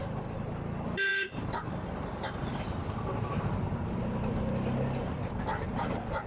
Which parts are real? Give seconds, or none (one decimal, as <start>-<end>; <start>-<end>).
0.0-6.3